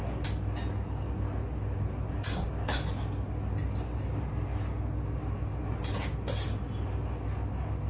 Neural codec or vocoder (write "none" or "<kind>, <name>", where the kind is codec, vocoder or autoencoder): none